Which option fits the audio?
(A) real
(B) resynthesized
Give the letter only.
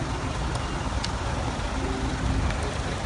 A